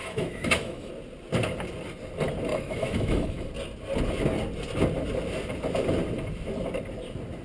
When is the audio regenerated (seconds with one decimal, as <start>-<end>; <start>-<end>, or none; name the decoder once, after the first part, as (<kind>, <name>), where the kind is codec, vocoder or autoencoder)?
0.0-0.9 (autoencoder, DAC-VAE); 2.5-3.5